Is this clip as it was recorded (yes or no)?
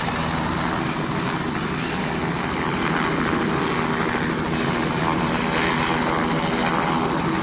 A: yes